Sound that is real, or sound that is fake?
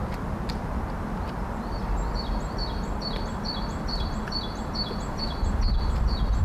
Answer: fake